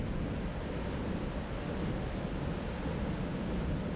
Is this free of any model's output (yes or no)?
yes